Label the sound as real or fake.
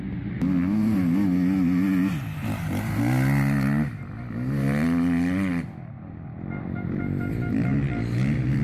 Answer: real